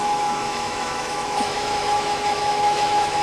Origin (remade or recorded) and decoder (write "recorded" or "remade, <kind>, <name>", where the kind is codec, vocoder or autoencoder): remade, autoencoder, DAC-VAE